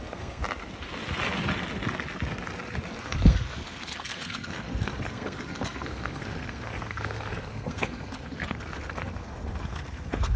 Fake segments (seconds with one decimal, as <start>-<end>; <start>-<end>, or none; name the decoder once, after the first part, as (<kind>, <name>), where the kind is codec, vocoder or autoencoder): 0.0-0.4 (codec, SNAC); 3.0-10.4